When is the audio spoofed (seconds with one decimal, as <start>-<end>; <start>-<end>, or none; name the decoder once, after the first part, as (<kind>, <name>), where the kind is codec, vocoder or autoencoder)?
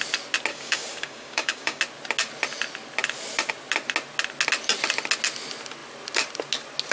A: 0.5-1.8 (codec, DAC)